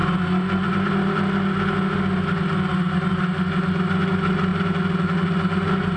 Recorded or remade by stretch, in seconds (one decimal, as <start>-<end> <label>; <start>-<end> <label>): 0.0-6.0 recorded